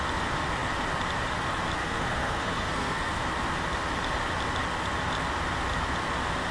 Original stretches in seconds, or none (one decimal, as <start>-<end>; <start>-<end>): 0.0-1.8; 3.2-6.5